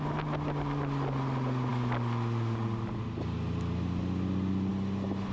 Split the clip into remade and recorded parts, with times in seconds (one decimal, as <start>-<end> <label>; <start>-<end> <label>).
0.0-5.3 recorded